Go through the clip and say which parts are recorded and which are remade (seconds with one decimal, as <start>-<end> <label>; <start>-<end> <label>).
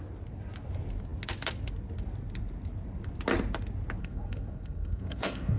0.0-4.0 recorded; 4.0-5.6 remade